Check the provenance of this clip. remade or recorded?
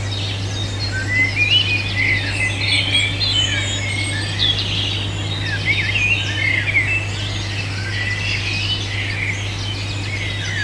recorded